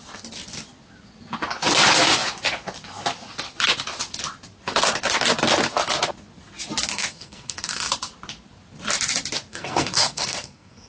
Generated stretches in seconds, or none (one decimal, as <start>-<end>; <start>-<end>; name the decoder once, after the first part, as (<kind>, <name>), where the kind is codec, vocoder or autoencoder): 6.9-7.9 (codec, SNAC); 9.5-10.9